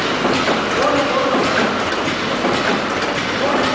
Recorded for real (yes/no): no